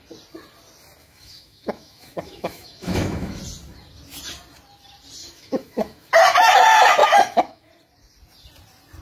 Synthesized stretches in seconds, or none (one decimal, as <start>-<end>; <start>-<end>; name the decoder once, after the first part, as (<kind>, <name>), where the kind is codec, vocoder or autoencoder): 1.0-3.4 (autoencoder, DAC-VAE); 5.2-6.1; 7.0-7.7